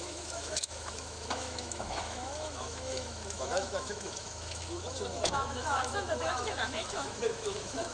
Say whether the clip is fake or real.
fake